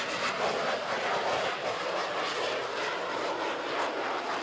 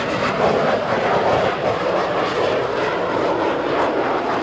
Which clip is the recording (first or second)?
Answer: first